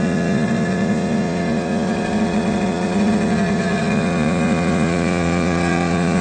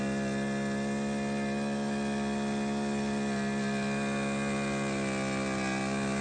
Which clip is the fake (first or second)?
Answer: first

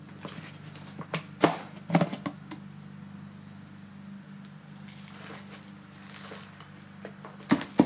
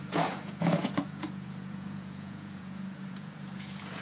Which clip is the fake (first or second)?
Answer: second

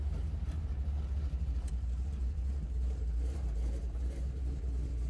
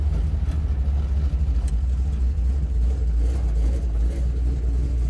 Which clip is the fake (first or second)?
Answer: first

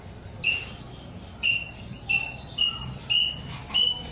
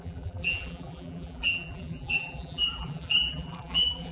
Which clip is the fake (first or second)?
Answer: second